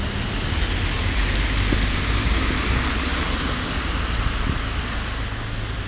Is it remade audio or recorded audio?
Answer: recorded